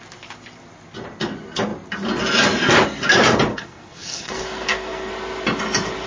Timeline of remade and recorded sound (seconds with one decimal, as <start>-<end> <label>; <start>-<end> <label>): 0.0-3.5 recorded; 3.5-5.1 remade; 5.1-6.1 recorded